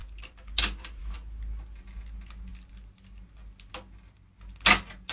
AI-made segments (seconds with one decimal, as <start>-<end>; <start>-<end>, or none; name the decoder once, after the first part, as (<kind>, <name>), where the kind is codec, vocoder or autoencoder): none